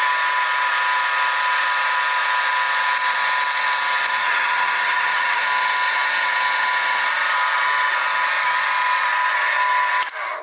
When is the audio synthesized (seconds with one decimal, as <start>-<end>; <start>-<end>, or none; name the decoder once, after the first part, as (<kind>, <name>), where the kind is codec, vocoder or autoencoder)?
4.2-5.4 (vocoder, HiFi-GAN)